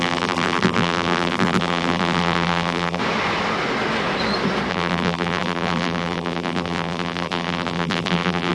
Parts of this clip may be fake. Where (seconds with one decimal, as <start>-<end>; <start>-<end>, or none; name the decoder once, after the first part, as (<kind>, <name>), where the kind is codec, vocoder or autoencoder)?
0.0-3.0 (vocoder, BigVGAN v2); 4.7-8.5